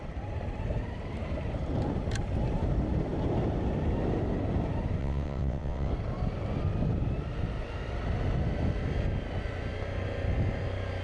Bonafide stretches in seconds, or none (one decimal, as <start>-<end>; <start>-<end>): 0.0-5.0; 5.9-11.0